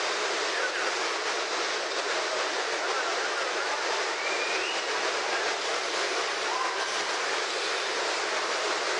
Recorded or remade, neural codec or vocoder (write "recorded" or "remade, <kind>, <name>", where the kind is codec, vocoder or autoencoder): recorded